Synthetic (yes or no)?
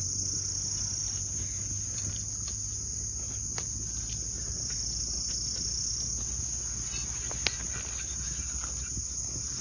no